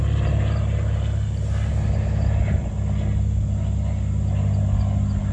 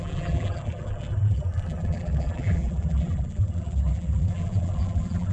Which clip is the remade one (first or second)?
second